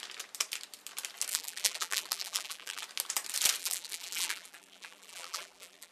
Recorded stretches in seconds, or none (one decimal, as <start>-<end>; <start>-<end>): 0.0-1.3; 2.8-3.6